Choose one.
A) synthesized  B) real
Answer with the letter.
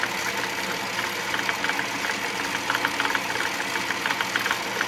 B